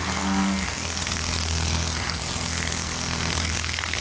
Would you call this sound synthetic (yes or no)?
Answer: yes